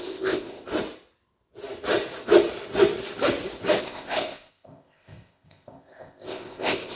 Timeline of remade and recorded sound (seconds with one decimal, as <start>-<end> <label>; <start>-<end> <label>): 0.0-0.7 remade; 0.7-3.8 recorded; 3.8-7.0 remade